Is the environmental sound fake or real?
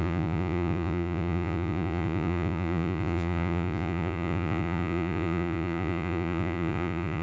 fake